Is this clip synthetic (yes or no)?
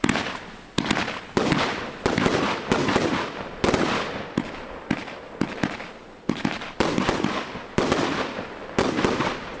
no